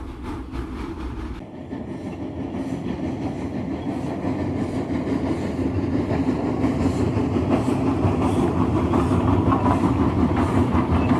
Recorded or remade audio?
recorded